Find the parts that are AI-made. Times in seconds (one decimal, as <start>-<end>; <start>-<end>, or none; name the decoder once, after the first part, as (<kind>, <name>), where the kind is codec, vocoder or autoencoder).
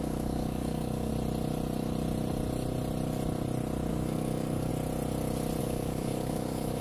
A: 0.0-1.1 (codec, DAC); 3.9-4.7; 5.6-6.8